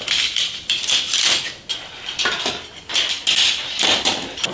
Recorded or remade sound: recorded